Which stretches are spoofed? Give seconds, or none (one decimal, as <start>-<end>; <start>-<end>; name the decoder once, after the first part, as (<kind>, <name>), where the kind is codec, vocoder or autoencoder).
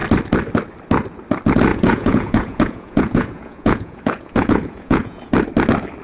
1.7-5.3 (vocoder, Vocos)